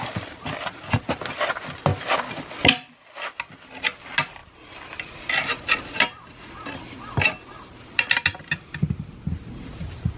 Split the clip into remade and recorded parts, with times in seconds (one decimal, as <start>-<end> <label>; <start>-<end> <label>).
0.0-10.2 recorded